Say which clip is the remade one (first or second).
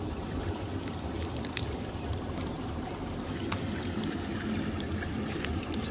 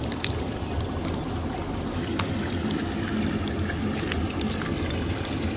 first